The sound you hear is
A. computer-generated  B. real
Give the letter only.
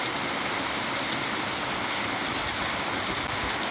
B